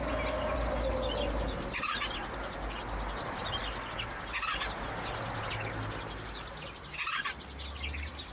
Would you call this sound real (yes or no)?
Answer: yes